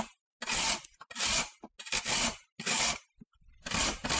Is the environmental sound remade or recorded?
recorded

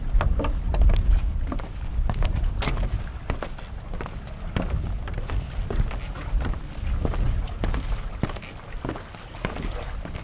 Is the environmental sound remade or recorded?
recorded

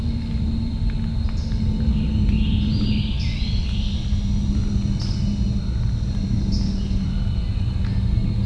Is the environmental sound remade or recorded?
recorded